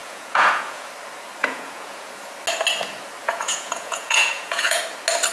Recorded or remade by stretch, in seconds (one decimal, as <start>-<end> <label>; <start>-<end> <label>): 0.0-0.9 remade; 0.9-1.4 recorded; 1.4-2.1 remade; 2.1-3.2 recorded; 3.2-4.8 remade; 4.8-5.3 recorded